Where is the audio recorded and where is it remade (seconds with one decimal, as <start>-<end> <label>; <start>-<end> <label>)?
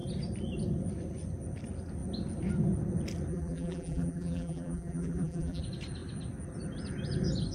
0.0-3.3 recorded; 3.3-5.6 remade; 5.6-7.5 recorded